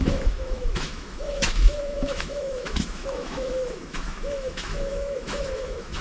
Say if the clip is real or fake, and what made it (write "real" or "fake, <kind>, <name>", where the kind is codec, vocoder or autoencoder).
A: fake, autoencoder, DAC-VAE